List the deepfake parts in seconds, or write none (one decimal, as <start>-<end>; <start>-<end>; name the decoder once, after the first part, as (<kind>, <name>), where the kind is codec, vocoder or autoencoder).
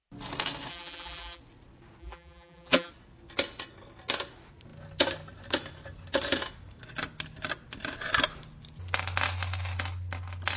0.7-1.4 (vocoder, BigVGAN v2); 2.0-2.9